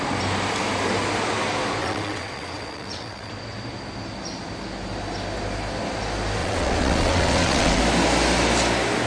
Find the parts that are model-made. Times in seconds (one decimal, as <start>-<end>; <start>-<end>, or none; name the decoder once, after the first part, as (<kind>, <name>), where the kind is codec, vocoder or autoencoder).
1.8-3.3 (vocoder, WaveNeXt); 6.4-7.8